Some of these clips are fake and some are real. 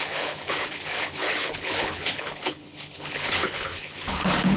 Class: fake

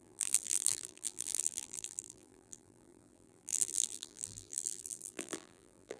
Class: fake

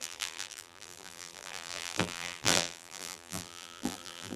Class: fake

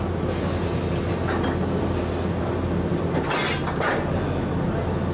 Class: real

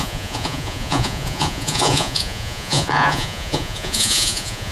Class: fake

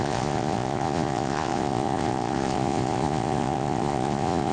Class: fake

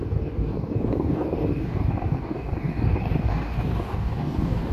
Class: fake